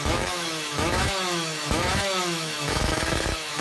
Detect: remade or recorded remade